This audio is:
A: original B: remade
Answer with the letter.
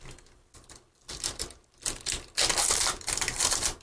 A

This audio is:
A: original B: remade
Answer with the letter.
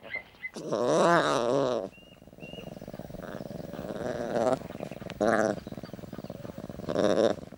B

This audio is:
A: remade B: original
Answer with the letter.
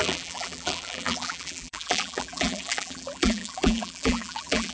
A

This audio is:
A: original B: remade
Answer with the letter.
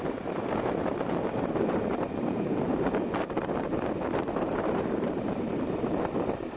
B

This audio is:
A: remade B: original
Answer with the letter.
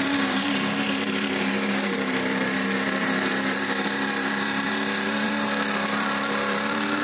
A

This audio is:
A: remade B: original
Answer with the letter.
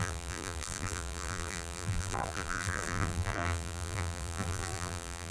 A